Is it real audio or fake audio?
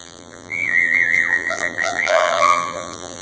fake